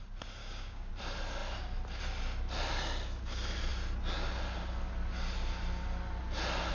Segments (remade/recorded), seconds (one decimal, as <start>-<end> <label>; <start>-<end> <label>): 0.0-0.4 recorded; 0.4-0.9 remade; 0.9-6.7 recorded